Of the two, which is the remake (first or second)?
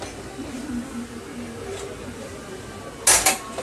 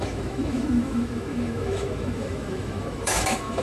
second